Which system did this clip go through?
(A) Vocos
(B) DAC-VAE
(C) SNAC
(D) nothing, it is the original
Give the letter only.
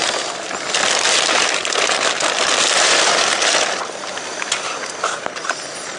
D